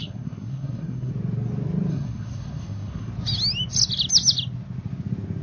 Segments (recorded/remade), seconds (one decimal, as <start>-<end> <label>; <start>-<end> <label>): 0.0-1.1 remade; 1.1-1.9 recorded; 1.9-3.1 remade; 3.1-5.4 recorded